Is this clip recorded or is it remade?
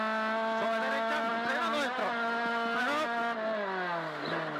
recorded